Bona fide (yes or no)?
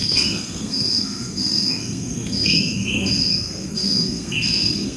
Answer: no